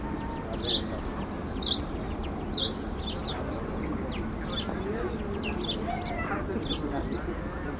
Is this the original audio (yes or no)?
yes